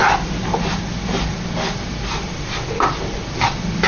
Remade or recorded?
recorded